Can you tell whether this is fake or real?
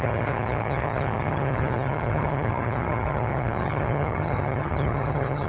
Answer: fake